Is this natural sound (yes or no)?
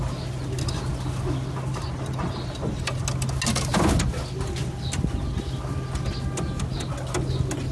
yes